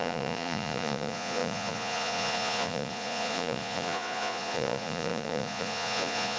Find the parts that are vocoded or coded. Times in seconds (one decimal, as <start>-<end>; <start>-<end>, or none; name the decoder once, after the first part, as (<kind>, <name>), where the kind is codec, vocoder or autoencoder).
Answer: 0.0-6.4 (vocoder, Vocos)